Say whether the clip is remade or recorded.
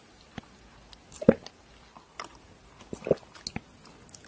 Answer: recorded